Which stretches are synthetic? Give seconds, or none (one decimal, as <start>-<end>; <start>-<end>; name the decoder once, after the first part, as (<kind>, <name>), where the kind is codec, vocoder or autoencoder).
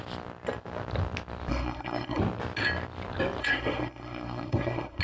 1.5-2.2 (codec, SNAC); 3.4-5.0